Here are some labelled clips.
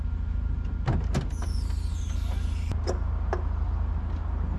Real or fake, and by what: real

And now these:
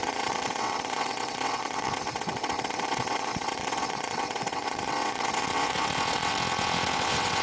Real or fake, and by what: fake, vocoder, WaveNeXt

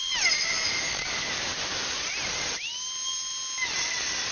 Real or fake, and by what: real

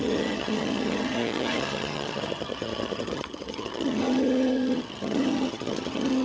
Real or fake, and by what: fake, vocoder, HiFi-GAN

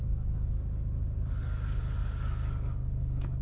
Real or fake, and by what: fake, codec, DAC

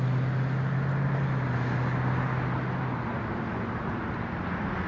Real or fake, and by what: real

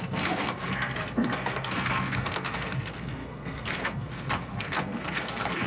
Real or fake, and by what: fake, codec, SNAC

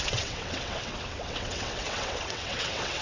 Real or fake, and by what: fake, vocoder, WaveNeXt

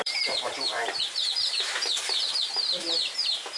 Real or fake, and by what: fake, vocoder, BigVGAN v2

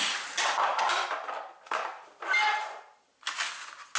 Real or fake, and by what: real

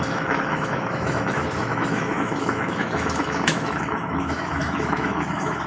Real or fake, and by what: fake, autoencoder, DAC-VAE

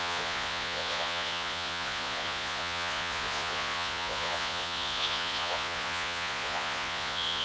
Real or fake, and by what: fake, vocoder, Vocos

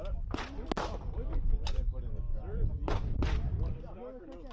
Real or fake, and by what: real